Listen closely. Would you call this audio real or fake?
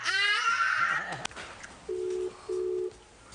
real